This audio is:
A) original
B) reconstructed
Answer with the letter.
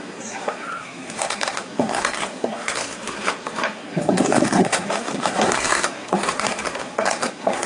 B